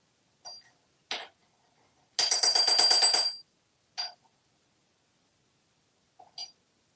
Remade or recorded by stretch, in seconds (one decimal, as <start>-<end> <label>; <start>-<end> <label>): 0.0-7.0 recorded